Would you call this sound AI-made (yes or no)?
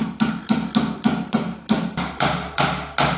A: no